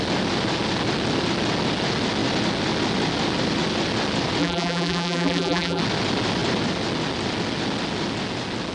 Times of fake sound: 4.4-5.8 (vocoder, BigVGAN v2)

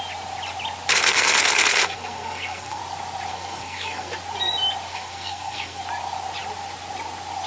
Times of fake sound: 0.9-2.8 (codec, SNAC); 3.3-4.1; 4.9-5.8